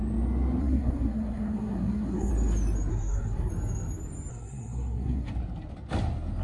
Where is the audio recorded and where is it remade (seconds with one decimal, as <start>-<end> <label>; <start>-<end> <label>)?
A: 0.0-0.6 recorded; 0.6-2.3 remade; 2.3-2.9 recorded; 2.9-3.5 remade; 3.5-4.3 recorded; 4.3-5.3 remade; 5.3-6.4 recorded